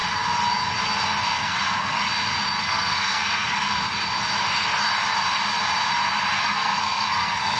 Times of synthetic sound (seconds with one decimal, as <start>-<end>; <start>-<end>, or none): 1.3-2.1; 2.6-3.8; 6.4-7.6